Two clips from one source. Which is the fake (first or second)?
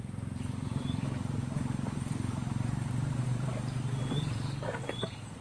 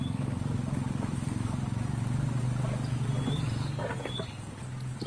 first